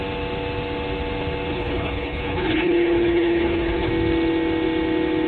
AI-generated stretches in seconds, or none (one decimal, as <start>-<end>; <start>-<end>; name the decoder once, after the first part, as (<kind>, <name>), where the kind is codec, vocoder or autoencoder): 1.5-3.9 (codec, HILCodec)